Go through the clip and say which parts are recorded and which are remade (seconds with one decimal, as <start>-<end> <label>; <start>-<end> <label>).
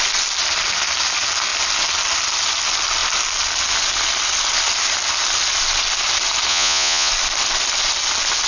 0.0-6.5 recorded; 6.5-7.1 remade; 7.1-8.5 recorded